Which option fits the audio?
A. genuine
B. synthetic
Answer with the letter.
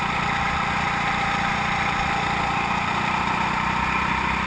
A